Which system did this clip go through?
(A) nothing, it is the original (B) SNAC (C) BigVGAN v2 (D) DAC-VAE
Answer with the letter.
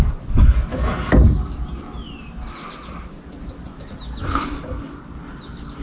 A